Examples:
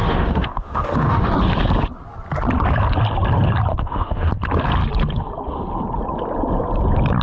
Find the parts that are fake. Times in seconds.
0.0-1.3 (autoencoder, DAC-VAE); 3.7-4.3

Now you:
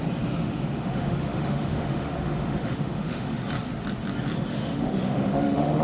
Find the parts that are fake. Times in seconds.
0.4-3.4 (autoencoder, DAC-VAE); 4.5-5.8

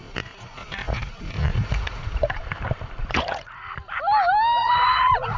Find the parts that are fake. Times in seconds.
0.0-2.4 (vocoder, Vocos); 3.0-3.6; 4.6-5.4

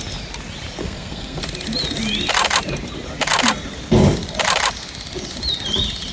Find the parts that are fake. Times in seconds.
0.8-1.4 (codec, SNAC)

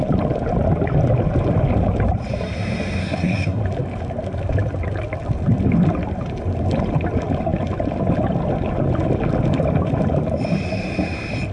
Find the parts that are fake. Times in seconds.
3.0-3.6 (codec, SNAC)

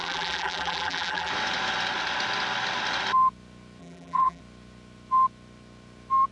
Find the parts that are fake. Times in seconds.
0.0-1.3 (vocoder, BigVGAN v2); 3.8-4.4

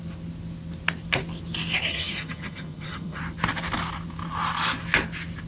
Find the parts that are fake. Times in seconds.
1.9-3.2 (vocoder, HiFi-GAN)